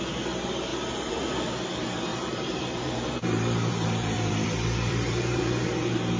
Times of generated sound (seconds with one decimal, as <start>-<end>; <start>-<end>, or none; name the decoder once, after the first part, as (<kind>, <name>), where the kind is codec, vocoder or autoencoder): 0.7-1.4 (vocoder, BigVGAN v2); 2.1-5.8